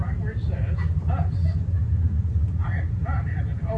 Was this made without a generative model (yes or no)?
yes